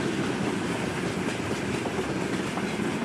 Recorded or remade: recorded